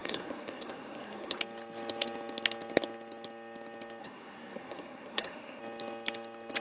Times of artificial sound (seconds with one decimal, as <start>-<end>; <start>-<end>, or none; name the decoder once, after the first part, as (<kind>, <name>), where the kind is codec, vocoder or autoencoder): 0.0-1.4 (codec, SNAC); 4.0-5.6